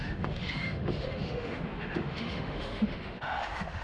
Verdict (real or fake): fake